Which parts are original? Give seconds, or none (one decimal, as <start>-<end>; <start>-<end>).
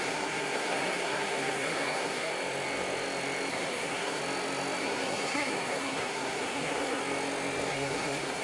2.3-3.5; 4.2-4.8; 7.0-7.7